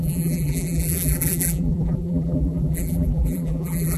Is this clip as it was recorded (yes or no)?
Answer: no